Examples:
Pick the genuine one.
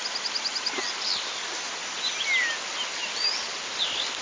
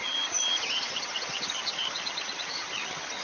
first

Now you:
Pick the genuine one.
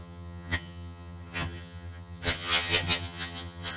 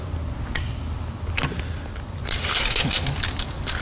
second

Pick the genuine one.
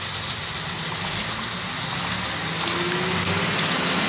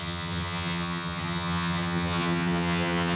first